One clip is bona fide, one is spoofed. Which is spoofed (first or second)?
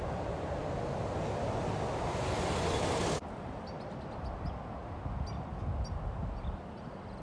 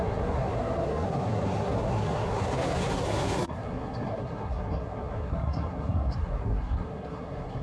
second